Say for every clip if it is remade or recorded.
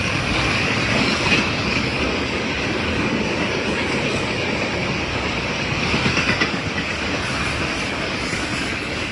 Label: remade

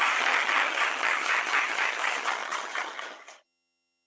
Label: remade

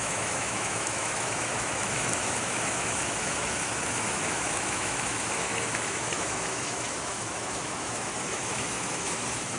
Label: remade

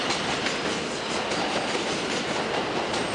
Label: recorded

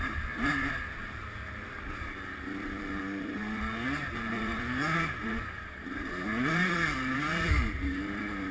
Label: remade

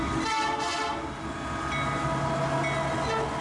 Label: recorded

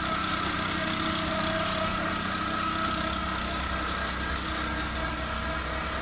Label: recorded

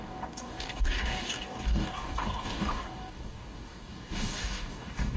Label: remade